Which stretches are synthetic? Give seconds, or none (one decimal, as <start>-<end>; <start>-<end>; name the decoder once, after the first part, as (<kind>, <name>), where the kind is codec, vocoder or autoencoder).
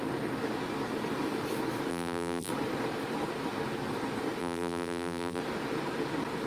1.9-2.5 (vocoder, BigVGAN v2); 4.4-5.4